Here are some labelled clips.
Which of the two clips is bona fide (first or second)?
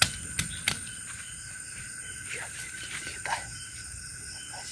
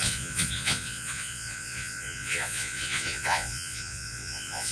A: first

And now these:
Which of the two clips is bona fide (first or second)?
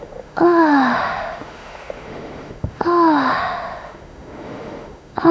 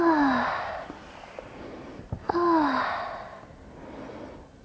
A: second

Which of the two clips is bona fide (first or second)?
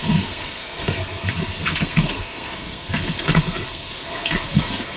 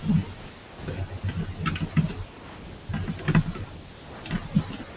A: second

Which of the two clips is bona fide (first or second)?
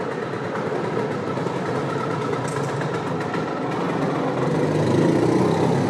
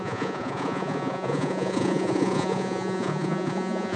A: first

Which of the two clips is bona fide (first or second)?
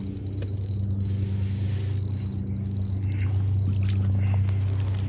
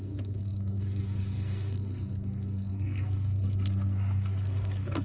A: first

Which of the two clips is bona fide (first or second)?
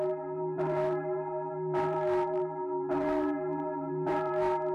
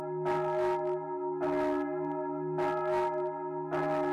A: second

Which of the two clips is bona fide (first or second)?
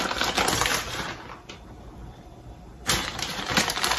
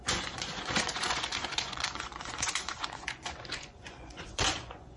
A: first